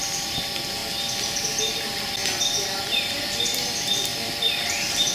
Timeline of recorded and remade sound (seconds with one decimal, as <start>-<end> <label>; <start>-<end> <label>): 0.0-0.8 remade; 0.8-1.4 recorded; 1.4-2.2 remade; 2.2-3.4 recorded; 3.4-5.1 remade